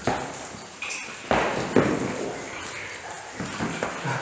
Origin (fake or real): real